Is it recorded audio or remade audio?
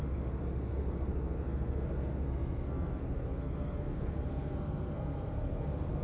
remade